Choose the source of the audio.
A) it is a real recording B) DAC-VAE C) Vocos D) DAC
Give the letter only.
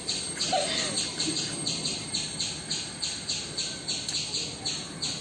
A